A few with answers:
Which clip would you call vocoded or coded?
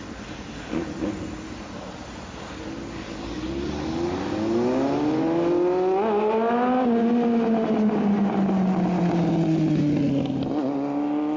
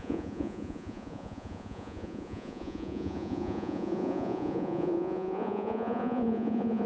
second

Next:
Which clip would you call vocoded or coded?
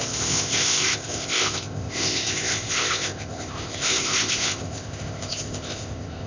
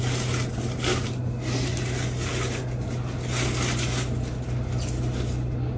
first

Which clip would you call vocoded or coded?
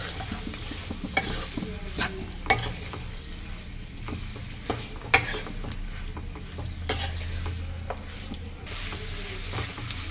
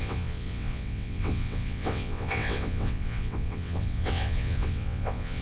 second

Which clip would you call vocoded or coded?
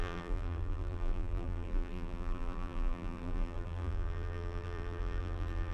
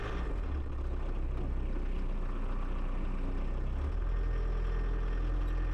first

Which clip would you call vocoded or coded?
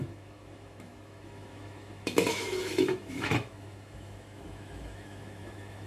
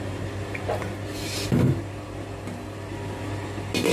first